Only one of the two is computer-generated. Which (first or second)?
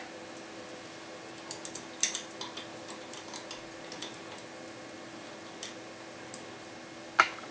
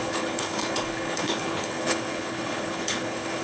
second